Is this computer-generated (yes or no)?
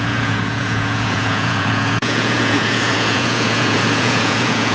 yes